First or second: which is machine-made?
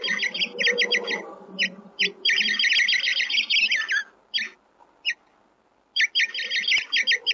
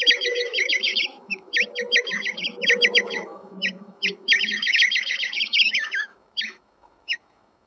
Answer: second